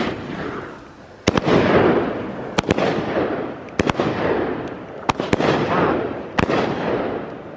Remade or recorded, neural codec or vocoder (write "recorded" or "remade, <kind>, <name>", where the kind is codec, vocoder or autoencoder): recorded